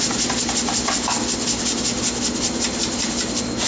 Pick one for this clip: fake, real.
real